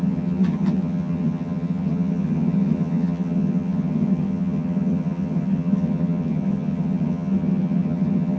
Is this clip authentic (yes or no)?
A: no